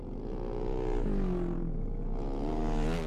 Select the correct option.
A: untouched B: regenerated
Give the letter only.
A